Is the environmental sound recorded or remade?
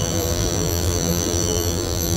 remade